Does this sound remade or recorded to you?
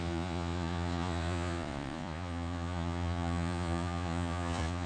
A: remade